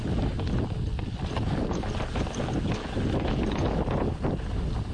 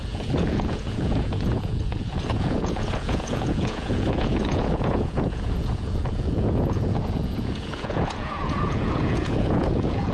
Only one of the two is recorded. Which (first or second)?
first